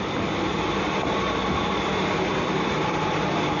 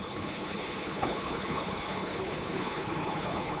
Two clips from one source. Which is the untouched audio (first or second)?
first